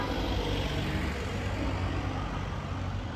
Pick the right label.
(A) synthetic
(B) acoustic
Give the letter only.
B